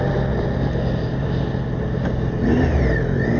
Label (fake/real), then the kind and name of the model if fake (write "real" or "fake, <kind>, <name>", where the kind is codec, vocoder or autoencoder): real